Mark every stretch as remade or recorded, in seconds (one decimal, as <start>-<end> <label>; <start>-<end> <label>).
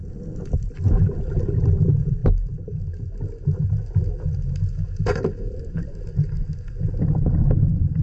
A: 0.0-8.0 recorded